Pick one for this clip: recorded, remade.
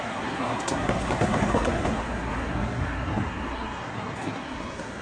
remade